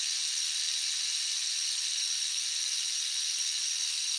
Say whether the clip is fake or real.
real